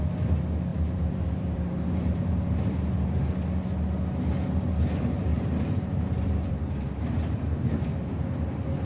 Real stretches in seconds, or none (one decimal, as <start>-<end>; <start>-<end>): 0.0-0.7; 2.9-5.3; 7.7-8.9